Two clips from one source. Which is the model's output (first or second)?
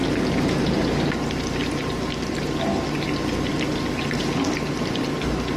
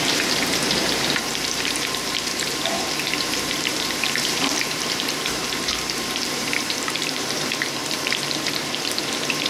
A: second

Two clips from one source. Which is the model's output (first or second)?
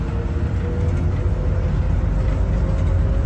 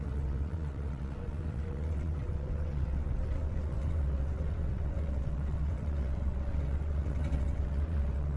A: second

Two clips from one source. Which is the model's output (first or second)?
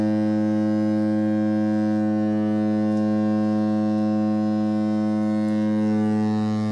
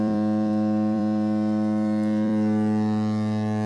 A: second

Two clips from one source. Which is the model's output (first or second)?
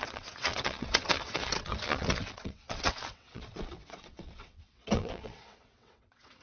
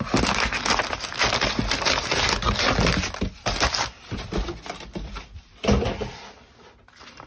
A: first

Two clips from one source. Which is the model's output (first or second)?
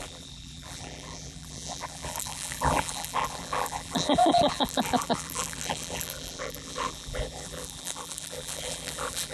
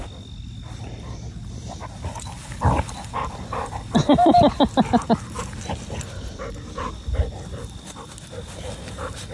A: first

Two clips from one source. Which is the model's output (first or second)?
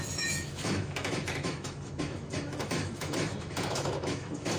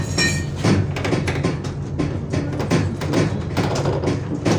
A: first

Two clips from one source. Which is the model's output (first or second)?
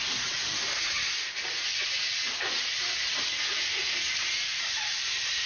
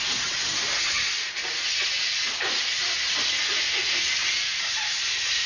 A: first